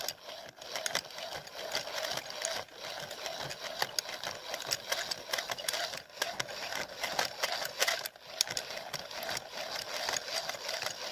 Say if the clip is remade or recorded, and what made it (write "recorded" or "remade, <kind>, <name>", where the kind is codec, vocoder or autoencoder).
recorded